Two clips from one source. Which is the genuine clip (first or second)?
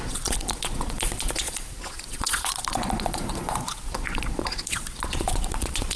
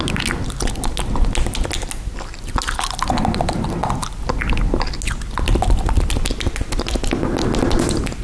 second